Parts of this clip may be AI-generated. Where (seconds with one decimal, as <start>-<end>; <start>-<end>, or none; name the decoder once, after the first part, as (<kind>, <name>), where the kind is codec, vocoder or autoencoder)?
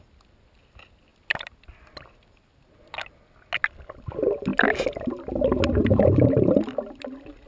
5.8-6.6 (vocoder, BigVGAN v2)